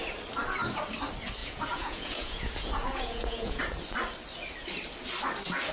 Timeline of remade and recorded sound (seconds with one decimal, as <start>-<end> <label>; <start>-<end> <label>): 0.0-1.4 recorded; 1.4-3.6 remade; 3.6-5.7 recorded